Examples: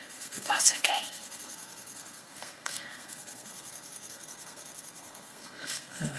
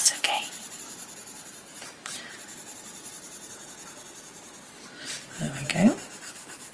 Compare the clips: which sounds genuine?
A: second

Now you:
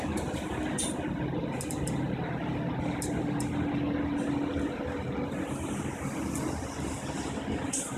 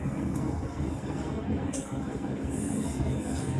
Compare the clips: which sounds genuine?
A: first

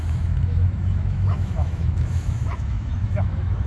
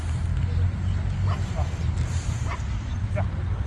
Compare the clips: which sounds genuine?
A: second